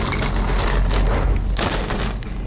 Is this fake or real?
real